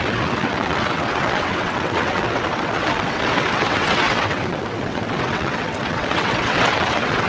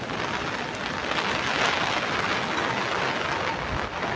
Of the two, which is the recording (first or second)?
second